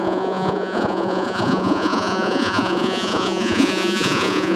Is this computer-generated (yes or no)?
yes